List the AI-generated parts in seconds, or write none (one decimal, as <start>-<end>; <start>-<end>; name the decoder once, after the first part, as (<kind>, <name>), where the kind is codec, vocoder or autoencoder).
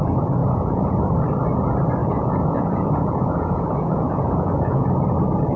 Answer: 0.4-1.0 (vocoder, Vocos); 2.0-4.9